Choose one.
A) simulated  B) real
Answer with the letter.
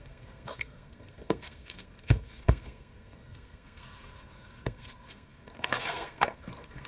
A